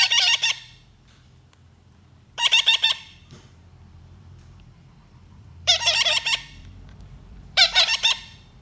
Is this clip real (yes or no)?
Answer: no